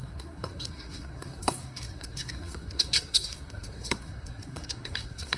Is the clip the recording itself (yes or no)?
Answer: no